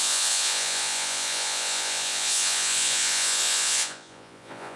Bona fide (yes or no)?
no